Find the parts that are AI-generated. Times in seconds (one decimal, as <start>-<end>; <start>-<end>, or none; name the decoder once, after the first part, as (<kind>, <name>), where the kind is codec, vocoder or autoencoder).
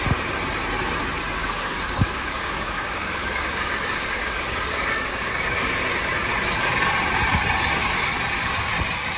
1.4-5.8 (codec, DAC)